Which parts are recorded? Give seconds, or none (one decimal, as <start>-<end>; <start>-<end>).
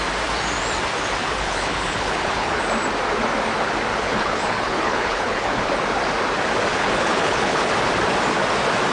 0.0-1.2; 2.6-3.9; 5.7-6.7; 7.7-8.9